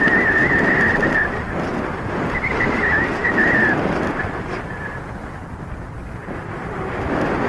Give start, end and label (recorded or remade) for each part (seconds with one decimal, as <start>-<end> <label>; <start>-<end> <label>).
0.0-6.2 recorded; 6.2-7.0 remade; 7.0-7.5 recorded